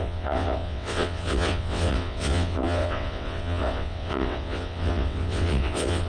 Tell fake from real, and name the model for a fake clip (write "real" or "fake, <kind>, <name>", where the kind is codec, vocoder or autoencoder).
fake, vocoder, WaveNeXt